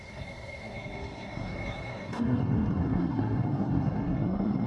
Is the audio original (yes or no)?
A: no